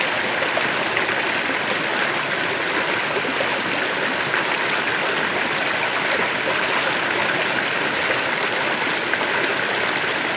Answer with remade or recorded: recorded